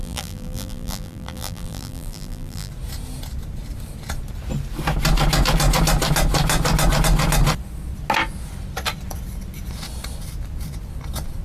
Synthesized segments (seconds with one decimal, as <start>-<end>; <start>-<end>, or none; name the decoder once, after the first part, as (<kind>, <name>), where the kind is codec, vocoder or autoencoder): 0.0-2.7 (vocoder, BigVGAN v2)

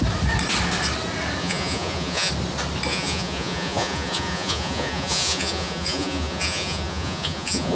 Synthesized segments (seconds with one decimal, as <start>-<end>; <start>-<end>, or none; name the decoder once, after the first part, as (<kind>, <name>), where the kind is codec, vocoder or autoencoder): 1.4-2.3 (vocoder, Vocos); 2.9-7.8

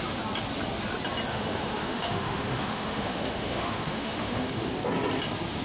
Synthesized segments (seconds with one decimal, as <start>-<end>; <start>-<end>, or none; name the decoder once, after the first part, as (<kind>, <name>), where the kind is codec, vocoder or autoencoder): 1.3-4.7 (autoencoder, DAC-VAE)

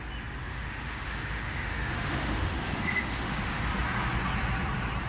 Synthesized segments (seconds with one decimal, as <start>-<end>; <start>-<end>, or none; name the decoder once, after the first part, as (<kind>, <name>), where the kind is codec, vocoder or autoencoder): 0.5-3.6 (autoencoder, DAC-VAE)

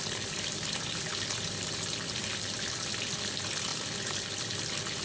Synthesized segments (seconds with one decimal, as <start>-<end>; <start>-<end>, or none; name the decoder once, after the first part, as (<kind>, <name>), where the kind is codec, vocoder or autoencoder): none